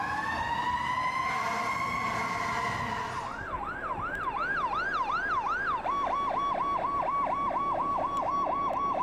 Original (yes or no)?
yes